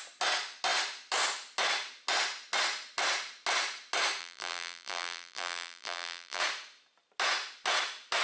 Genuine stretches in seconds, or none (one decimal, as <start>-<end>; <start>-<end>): 0.0-4.2; 6.4-8.2